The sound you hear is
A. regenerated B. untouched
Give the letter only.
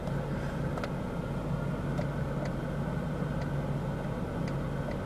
B